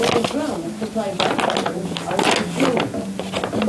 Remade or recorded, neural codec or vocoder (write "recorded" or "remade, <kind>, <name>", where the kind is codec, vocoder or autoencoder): recorded